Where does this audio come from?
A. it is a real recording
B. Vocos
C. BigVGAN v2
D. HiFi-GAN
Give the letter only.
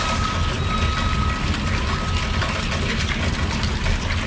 A